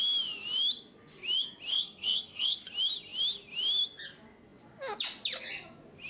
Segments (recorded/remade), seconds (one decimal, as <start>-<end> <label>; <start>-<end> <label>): 0.0-1.7 recorded; 1.7-2.7 remade; 2.7-6.1 recorded